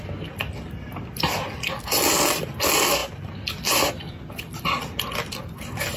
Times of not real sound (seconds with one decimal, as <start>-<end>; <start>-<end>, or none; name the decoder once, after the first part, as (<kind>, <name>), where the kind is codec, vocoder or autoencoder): none